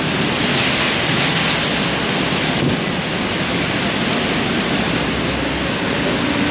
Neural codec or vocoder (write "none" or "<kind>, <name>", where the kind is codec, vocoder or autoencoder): none